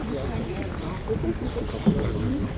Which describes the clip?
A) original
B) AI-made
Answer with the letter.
A